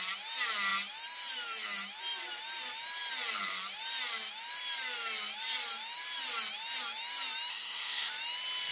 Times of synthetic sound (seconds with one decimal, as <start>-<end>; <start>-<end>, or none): 7.5-8.1